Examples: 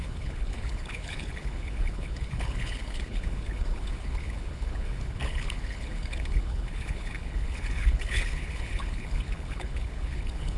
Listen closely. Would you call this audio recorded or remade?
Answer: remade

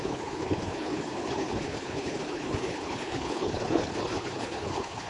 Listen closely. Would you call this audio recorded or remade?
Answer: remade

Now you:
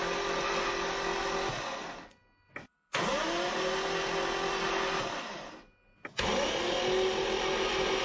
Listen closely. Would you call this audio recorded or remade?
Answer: recorded